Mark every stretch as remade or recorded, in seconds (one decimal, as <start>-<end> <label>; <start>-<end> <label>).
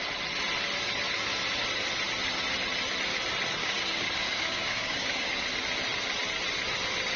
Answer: 0.0-3.6 recorded; 3.6-5.3 remade; 5.3-7.2 recorded